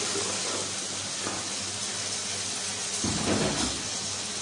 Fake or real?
real